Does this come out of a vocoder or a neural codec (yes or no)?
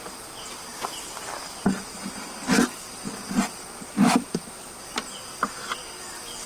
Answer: no